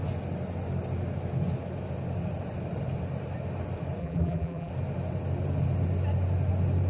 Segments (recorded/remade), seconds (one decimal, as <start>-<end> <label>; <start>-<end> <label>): 0.0-4.0 recorded; 4.0-4.7 remade; 4.7-6.9 recorded